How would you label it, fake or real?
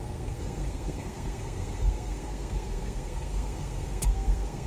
fake